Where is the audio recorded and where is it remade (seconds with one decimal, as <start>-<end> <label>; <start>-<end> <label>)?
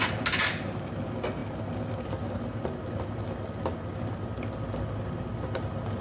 0.0-6.0 recorded